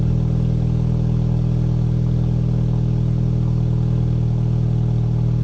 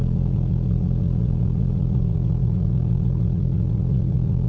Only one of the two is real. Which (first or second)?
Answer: first